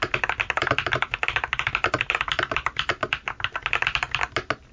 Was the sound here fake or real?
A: real